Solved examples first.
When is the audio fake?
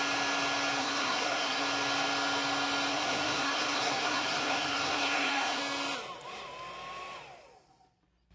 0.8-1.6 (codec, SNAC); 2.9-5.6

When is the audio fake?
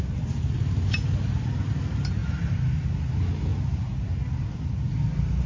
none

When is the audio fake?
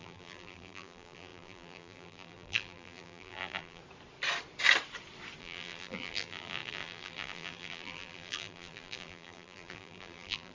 0.0-3.8 (vocoder, BigVGAN v2); 5.4-10.5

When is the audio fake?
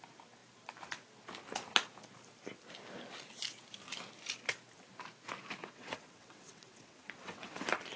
5.6-7.6 (vocoder, WaveNeXt)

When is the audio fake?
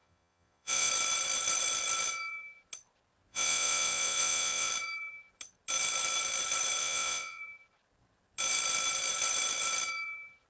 0.0-0.9 (vocoder, Vocos); 3.3-4.7; 6.8-7.4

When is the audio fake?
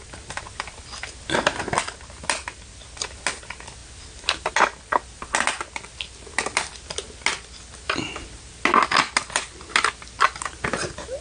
none